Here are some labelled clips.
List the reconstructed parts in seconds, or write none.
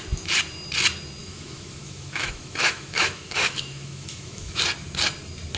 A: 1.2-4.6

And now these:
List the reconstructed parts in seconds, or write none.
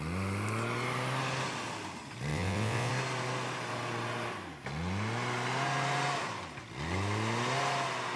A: 2.3-2.9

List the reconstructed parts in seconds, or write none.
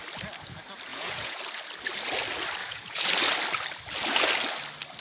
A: 0.9-1.4; 2.6-3.1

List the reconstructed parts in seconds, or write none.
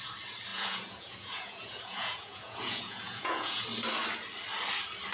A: 0.5-3.6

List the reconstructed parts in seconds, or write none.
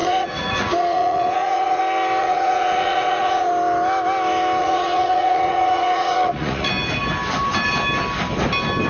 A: 0.0-1.8; 2.2-3.5; 4.6-6.7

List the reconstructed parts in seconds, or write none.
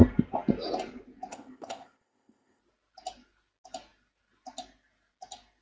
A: 1.3-2.6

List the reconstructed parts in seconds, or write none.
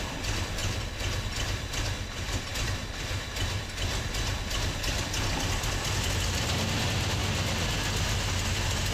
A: none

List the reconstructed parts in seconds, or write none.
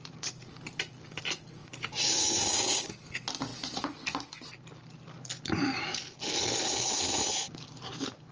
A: 1.6-2.9